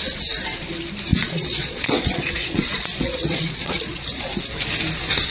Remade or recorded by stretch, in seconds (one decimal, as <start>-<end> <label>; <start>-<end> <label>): 0.0-1.1 recorded; 1.1-4.3 remade; 4.3-5.3 recorded

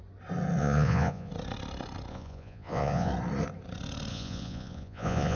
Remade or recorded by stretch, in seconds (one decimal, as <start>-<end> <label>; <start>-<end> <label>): 0.0-0.6 recorded; 0.6-1.3 remade; 1.3-2.1 recorded; 2.1-3.1 remade; 3.1-4.1 recorded; 4.1-5.4 remade